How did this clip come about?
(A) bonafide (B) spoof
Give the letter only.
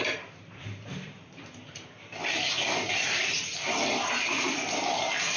B